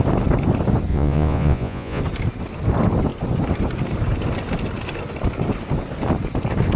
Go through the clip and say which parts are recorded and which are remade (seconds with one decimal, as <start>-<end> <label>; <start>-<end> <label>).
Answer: 0.0-0.9 recorded; 0.9-2.0 remade; 2.0-6.8 recorded